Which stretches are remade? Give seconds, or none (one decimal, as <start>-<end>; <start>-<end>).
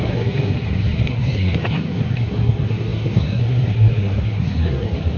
0.0-5.2